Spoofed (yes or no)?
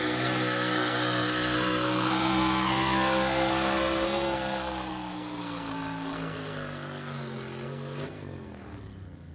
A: yes